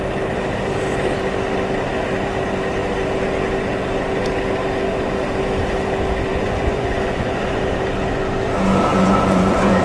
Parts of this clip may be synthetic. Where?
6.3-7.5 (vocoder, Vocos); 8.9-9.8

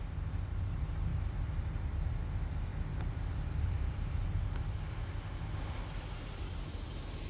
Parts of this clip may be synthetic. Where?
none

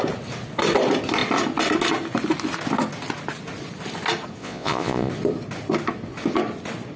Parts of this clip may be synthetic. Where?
4.4-5.1 (vocoder, Vocos)

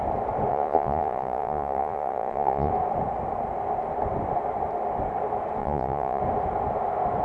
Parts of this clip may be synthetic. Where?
0.5-2.7 (vocoder, Vocos); 5.6-6.2

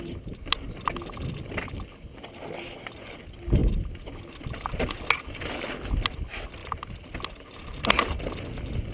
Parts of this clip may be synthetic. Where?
none

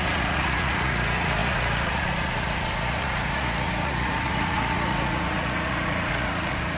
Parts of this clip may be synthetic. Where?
0.0-6.8 (vocoder, Vocos)

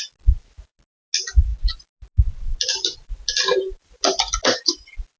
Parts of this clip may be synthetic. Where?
none

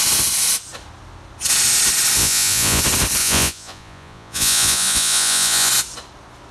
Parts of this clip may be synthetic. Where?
2.2-2.8 (vocoder, Vocos); 3.2-5.7